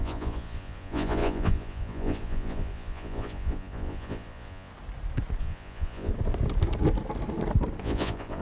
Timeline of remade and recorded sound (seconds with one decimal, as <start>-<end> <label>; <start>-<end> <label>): 0.0-4.7 remade; 4.7-5.4 recorded; 5.4-6.1 remade; 6.1-7.8 recorded; 7.8-8.4 remade

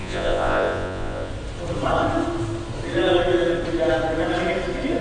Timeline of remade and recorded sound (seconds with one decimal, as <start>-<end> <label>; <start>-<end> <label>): 0.0-1.3 remade; 1.3-5.0 recorded

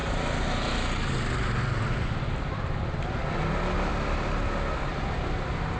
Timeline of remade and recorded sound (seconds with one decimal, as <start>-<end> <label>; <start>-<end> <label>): 0.0-5.8 recorded

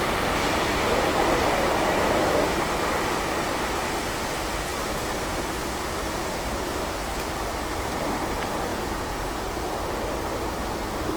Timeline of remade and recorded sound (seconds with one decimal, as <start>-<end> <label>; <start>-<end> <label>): 0.0-8.7 recorded; 8.7-9.5 remade; 9.5-11.2 recorded

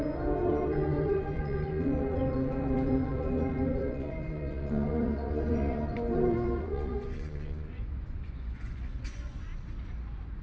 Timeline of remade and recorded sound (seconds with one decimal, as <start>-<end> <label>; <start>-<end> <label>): 0.0-9.5 remade; 9.5-10.4 recorded

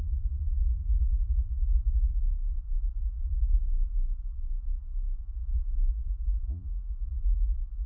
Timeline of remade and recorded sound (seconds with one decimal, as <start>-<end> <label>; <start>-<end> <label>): 0.0-2.2 remade; 2.2-3.0 recorded; 3.0-3.6 remade; 3.6-5.2 recorded; 5.2-7.9 remade